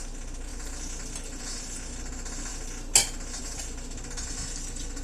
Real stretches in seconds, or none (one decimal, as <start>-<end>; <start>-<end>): 0.0-5.0